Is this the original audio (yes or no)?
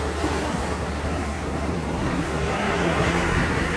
no